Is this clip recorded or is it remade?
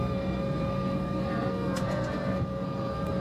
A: remade